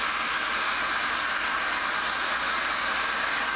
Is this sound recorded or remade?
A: recorded